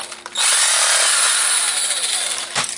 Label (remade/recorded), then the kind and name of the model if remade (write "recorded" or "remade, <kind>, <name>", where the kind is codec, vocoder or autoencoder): recorded